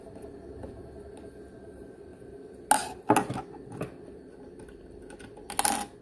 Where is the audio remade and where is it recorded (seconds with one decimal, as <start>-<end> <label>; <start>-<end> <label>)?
0.0-6.0 recorded